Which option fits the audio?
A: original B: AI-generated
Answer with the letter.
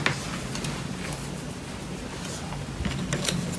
A